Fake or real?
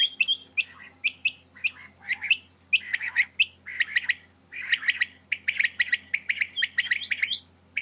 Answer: real